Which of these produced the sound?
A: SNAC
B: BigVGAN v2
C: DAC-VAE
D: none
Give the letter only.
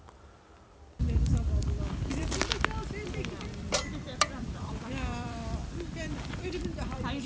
B